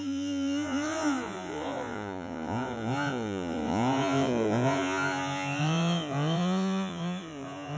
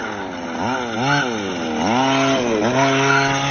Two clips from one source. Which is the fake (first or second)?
first